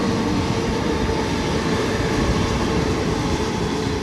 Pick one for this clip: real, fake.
real